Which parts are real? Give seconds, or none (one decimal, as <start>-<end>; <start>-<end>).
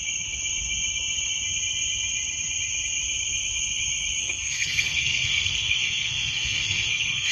0.0-4.2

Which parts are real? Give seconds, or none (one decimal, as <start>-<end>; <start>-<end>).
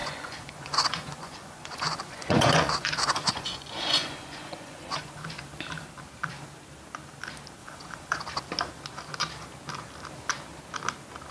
5.2-7.6; 8.2-11.3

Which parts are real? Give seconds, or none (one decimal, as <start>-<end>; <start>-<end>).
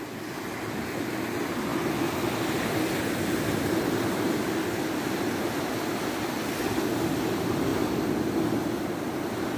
0.0-9.6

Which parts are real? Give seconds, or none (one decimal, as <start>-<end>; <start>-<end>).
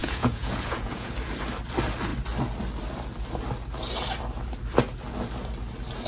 1.1-6.1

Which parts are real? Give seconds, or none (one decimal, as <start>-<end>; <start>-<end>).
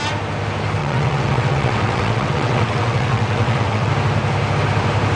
0.0-0.8; 3.9-5.2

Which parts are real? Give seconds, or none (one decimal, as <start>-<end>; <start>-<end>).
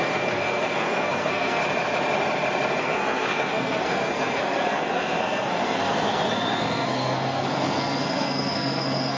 1.6-2.8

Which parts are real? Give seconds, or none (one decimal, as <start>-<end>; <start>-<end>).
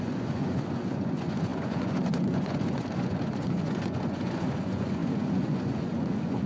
none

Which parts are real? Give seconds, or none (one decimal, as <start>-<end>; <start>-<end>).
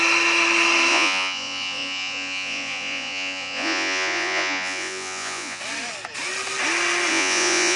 0.0-0.9; 5.6-7.1